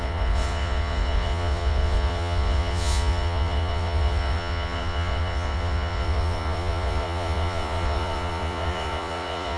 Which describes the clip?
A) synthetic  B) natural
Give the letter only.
A